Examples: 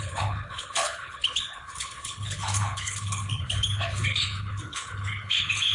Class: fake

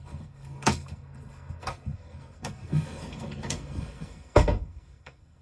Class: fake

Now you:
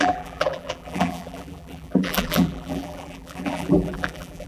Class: fake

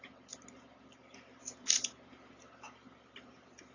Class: real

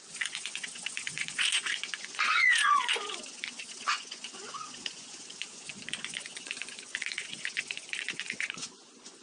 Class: fake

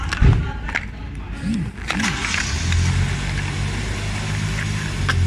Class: real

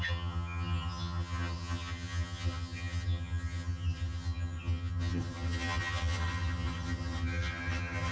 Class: fake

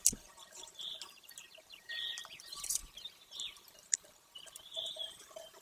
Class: fake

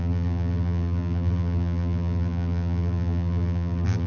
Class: fake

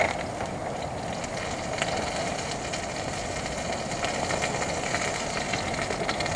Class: real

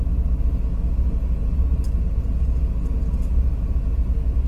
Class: real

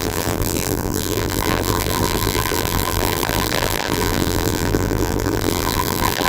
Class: fake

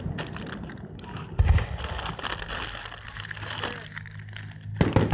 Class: real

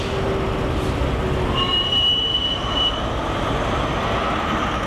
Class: real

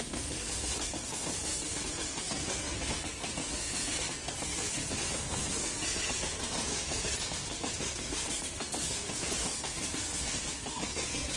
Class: fake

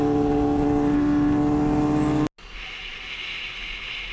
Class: real